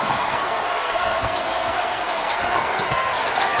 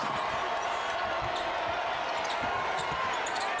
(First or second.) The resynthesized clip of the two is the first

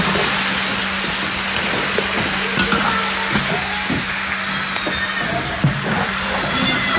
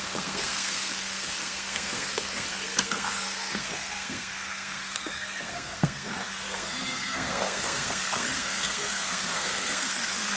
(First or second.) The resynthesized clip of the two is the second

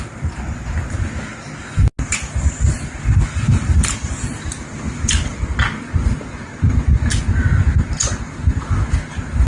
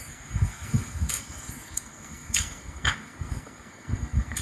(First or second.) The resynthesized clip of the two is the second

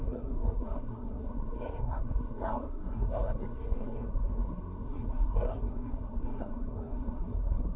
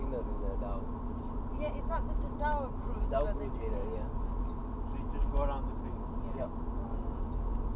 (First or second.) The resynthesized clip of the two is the first